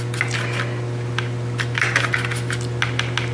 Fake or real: real